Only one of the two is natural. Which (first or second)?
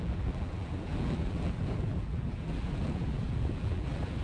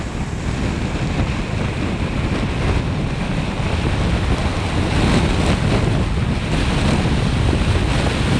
second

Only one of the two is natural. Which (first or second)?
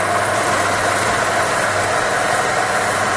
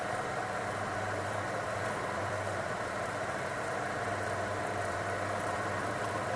first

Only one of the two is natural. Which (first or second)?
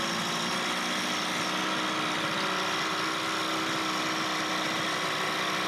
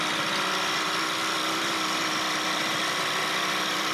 first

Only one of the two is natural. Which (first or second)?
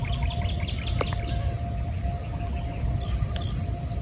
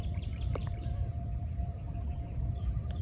first